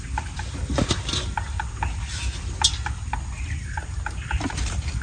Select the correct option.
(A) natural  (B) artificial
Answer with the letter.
A